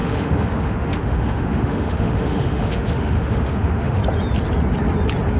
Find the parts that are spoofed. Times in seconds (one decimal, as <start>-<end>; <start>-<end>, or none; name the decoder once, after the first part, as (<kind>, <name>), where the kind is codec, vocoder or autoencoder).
0.0-4.0 (autoencoder, DAC-VAE)